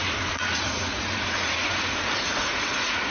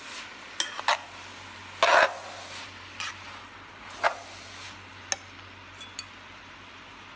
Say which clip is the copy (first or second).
first